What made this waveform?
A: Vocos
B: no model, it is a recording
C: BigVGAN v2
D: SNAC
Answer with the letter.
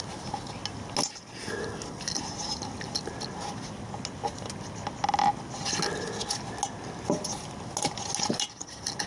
B